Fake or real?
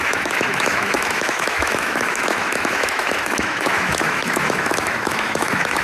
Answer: fake